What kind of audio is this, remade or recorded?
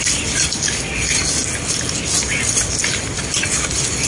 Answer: recorded